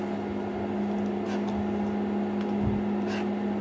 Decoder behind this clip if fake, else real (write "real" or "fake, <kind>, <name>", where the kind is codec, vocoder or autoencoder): real